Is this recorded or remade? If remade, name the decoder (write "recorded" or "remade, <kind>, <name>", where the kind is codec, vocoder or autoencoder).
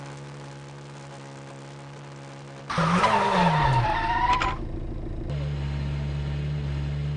recorded